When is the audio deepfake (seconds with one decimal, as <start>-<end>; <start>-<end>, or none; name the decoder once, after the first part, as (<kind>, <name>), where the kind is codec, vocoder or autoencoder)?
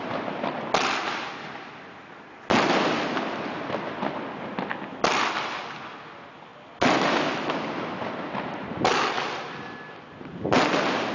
none